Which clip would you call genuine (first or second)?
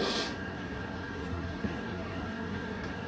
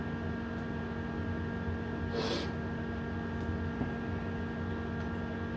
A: second